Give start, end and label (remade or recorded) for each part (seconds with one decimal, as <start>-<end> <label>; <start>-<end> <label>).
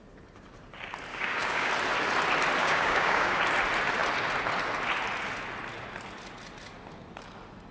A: 0.0-1.1 recorded; 1.1-1.7 remade; 1.7-2.6 recorded; 2.6-3.4 remade; 3.4-7.7 recorded